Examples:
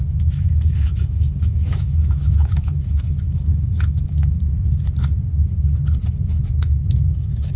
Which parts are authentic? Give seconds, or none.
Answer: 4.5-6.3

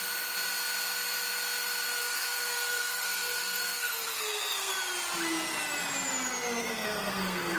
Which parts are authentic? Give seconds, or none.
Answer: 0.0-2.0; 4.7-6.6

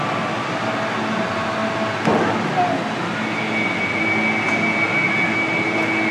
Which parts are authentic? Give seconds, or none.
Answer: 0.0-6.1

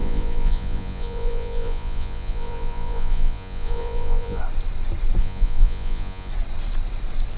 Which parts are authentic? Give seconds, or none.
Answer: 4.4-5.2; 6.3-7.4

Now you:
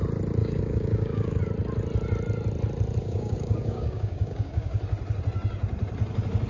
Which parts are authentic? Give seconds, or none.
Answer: 0.0-0.4; 1.4-3.0; 4.8-6.5

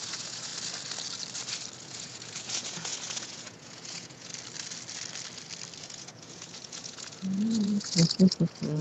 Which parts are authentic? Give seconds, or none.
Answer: 0.5-1.8; 4.3-5.8

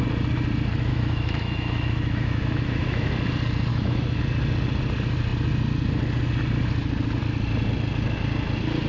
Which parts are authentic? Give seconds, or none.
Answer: 0.0-0.9; 3.1-3.7; 4.2-8.9

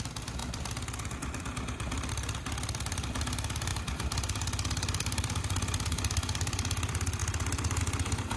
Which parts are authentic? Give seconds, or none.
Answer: 7.2-7.8